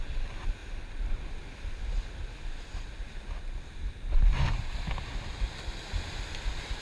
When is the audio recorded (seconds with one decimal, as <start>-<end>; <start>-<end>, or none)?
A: 0.0-6.8